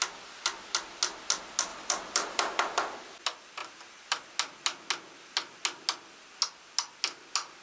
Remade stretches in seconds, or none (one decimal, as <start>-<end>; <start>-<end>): 1.7-3.0